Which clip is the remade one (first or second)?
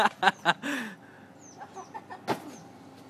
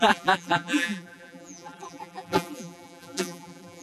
second